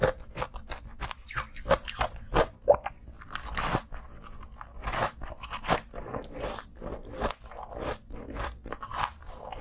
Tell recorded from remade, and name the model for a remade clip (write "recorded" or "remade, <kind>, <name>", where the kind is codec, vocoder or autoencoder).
recorded